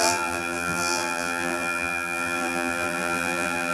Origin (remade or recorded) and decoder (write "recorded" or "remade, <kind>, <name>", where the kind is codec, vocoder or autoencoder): remade, vocoder, BigVGAN v2